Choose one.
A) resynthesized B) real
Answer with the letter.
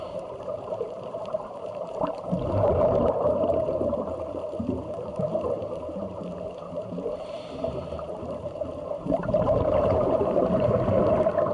A